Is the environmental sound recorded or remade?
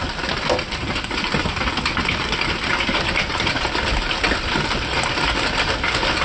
recorded